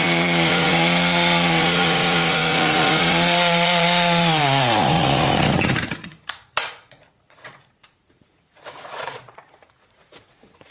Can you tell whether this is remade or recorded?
remade